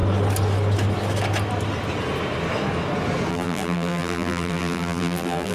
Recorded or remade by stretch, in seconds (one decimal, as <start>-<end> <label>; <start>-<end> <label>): 0.0-3.3 recorded; 3.3-5.5 remade